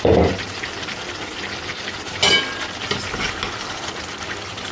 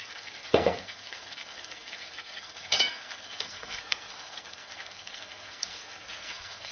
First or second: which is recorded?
first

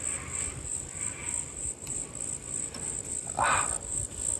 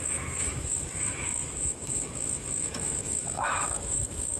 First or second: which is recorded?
first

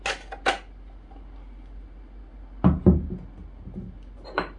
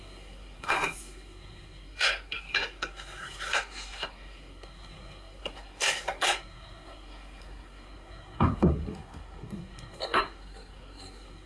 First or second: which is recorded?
first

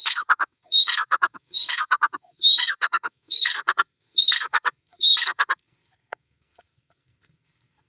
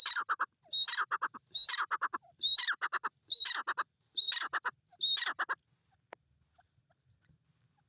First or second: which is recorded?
second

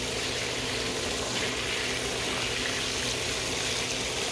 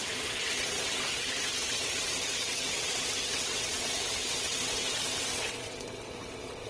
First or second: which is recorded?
first